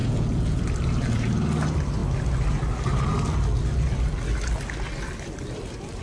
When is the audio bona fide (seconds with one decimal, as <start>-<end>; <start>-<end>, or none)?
0.6-6.0